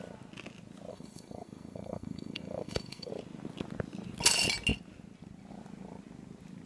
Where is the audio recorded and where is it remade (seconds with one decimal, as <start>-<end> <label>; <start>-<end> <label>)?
0.0-0.9 recorded; 0.9-3.1 remade; 3.1-6.7 recorded